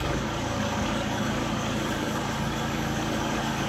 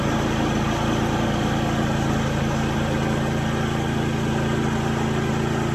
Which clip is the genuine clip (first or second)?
second